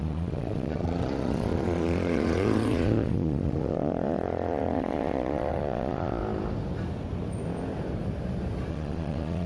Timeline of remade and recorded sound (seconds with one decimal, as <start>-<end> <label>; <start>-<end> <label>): 0.0-6.2 remade; 6.2-8.7 recorded; 8.7-9.5 remade